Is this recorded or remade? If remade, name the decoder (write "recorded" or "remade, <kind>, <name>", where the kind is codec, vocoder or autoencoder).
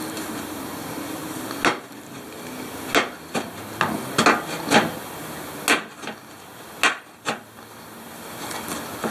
recorded